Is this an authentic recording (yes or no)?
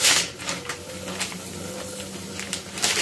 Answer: yes